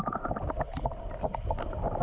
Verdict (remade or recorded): recorded